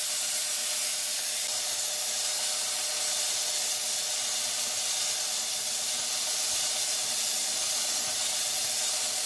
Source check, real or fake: real